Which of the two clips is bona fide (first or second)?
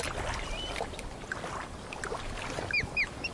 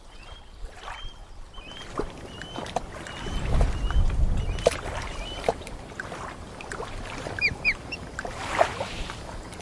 first